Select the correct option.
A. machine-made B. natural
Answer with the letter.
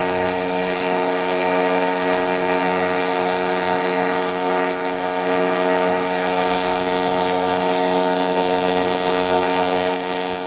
A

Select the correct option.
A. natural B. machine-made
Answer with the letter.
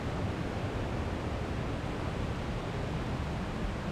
A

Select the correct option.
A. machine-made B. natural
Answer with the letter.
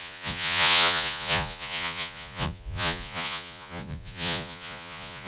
A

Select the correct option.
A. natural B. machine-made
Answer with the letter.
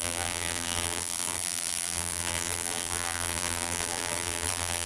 B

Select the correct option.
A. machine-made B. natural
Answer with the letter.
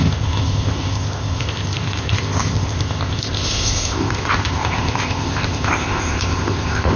A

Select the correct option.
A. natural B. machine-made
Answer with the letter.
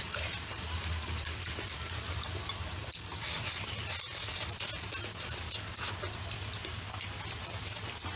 A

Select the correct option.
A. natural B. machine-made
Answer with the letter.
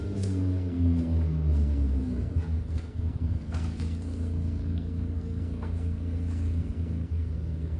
B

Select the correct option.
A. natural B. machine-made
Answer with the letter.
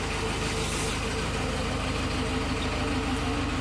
A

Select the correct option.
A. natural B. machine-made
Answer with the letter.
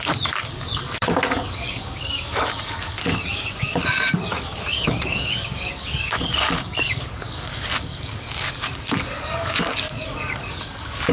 B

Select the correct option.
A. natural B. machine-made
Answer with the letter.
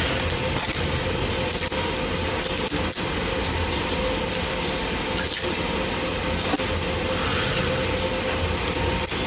A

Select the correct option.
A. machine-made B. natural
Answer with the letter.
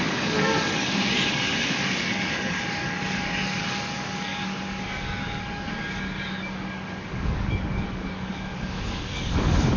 A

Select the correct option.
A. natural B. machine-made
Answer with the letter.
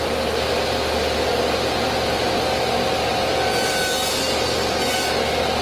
A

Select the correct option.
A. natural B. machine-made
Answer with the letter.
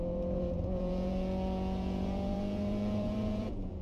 B